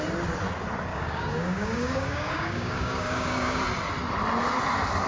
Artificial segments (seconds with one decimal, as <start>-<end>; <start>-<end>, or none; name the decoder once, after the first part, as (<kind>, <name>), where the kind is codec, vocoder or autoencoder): 0.9-3.6 (codec, DAC)

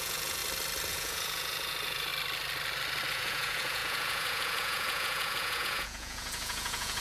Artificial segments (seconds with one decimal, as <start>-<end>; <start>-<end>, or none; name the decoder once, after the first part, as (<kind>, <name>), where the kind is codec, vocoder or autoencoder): 0.0-0.4 (vocoder, Vocos); 0.9-2.1; 3.1-7.0

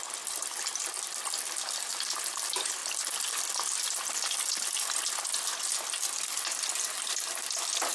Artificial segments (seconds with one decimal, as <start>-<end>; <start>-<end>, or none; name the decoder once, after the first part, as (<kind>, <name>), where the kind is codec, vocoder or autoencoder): none

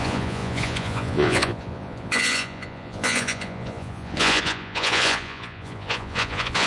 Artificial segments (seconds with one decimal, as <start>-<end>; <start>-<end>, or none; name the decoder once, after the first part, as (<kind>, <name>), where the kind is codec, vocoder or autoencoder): 0.0-6.7 (vocoder, Vocos)

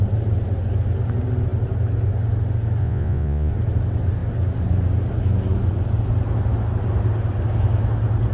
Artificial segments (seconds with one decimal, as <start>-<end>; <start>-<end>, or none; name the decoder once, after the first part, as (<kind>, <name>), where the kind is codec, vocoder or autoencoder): 2.8-3.5 (vocoder, Vocos)